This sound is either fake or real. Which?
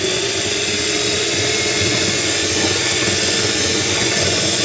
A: fake